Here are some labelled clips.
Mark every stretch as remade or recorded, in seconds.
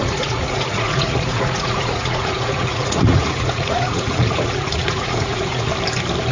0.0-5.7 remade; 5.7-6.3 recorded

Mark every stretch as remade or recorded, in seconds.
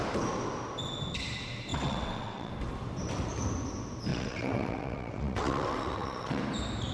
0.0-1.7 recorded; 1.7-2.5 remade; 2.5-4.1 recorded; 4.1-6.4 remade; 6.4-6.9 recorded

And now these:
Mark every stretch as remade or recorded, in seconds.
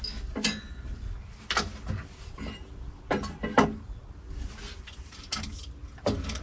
0.0-6.4 recorded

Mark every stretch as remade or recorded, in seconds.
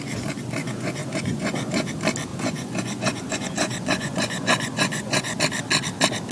0.0-0.6 recorded; 0.6-1.9 remade; 1.9-2.3 recorded; 2.3-5.4 remade; 5.4-6.3 recorded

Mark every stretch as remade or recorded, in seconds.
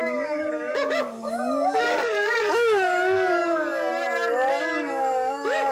0.0-3.9 remade; 3.9-4.6 recorded; 4.6-5.7 remade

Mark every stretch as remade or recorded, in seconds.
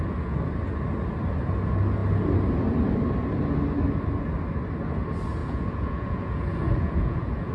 0.0-5.4 recorded; 5.4-7.5 remade